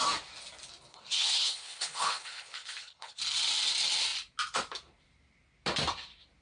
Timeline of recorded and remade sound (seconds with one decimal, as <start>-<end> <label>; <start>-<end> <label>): 0.0-0.9 recorded; 0.9-3.2 remade; 3.2-6.4 recorded